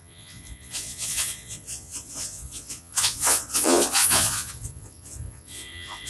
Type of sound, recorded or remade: remade